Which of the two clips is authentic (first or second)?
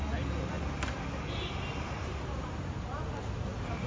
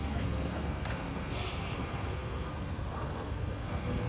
first